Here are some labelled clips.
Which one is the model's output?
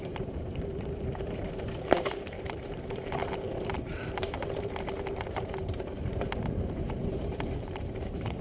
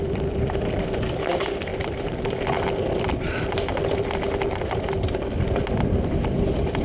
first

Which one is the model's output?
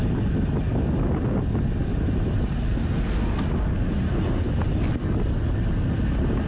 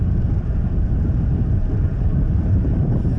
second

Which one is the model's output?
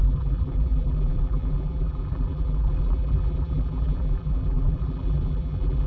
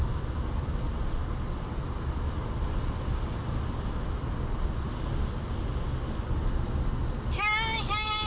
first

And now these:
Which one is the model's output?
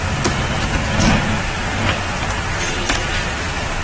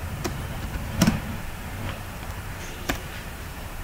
second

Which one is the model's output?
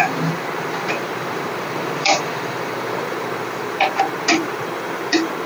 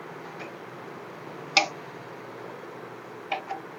first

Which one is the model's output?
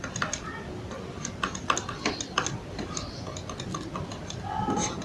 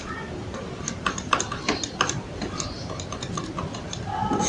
second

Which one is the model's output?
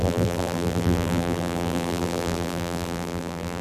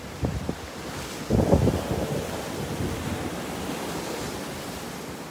first